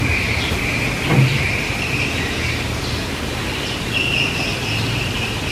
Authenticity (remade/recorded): remade